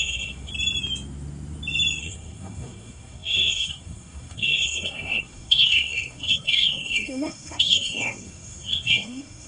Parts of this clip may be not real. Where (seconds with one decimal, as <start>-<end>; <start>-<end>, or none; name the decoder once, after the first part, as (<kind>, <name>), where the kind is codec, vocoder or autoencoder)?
0.0-0.5 (codec, SNAC); 2.0-9.5